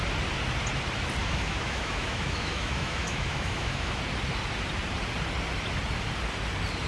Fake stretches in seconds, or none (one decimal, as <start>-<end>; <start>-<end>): 1.2-4.0